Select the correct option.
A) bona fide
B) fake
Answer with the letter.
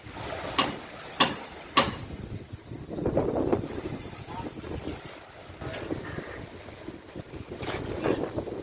A